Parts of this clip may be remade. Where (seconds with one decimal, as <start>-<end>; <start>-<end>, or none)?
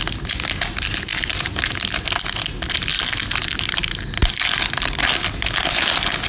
none